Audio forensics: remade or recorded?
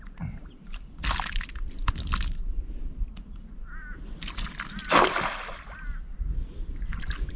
recorded